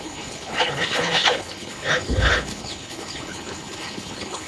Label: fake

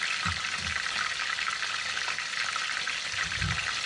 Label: real